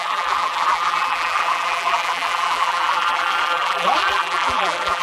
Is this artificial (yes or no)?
yes